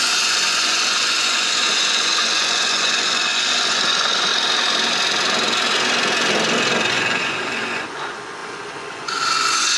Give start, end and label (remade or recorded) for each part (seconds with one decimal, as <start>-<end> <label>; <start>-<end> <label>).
0.0-4.3 remade; 4.3-6.9 recorded; 6.9-9.8 remade